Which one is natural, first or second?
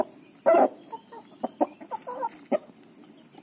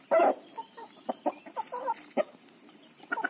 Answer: first